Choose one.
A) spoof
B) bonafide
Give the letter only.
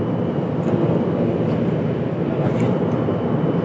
B